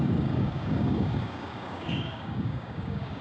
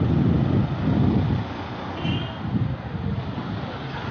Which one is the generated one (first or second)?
first